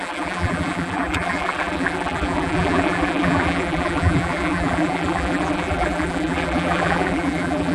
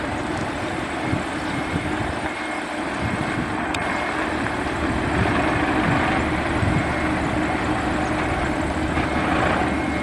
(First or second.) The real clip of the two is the second